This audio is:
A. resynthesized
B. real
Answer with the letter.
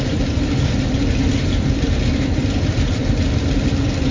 A